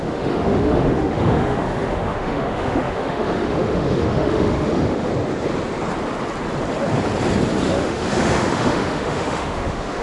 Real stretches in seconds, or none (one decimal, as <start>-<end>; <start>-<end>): 5.1-7.6